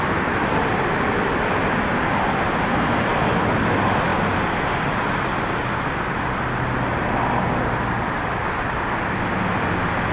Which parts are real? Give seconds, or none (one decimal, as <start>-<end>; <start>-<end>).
0.0-10.1